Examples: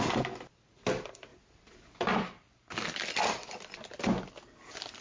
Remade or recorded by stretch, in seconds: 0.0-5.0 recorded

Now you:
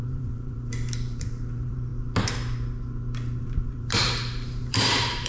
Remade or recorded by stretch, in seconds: 0.0-1.9 remade; 1.9-3.4 recorded; 3.4-4.0 remade; 4.0-4.5 recorded; 4.5-5.3 remade

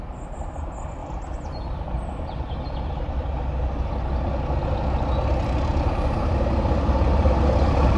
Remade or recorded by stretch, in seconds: 0.0-1.0 recorded; 1.0-3.7 remade; 3.7-8.0 recorded

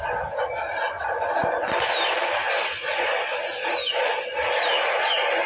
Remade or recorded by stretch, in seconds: 0.0-5.5 recorded

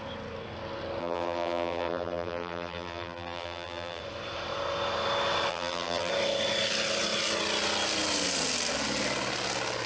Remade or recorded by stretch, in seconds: 0.0-1.0 recorded; 1.0-4.0 remade; 4.0-5.5 recorded; 5.5-6.1 remade; 6.1-9.9 recorded

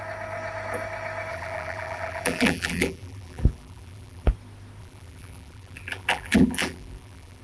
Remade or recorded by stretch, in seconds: 0.0-1.3 recorded; 1.3-4.3 remade; 4.3-4.8 recorded; 4.8-7.4 remade